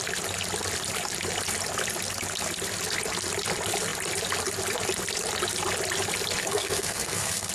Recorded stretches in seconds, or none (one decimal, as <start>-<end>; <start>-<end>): 0.0-6.4